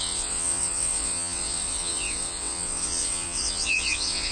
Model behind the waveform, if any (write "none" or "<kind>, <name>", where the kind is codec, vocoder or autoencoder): vocoder, WaveNeXt